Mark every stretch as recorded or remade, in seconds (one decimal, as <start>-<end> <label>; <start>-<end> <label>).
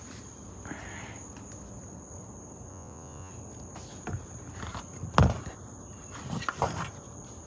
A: 0.0-2.7 recorded; 2.7-3.3 remade; 3.3-7.5 recorded